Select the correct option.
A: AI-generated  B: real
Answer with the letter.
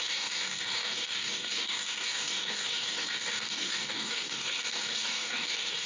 A